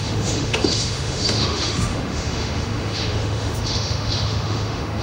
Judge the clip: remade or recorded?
remade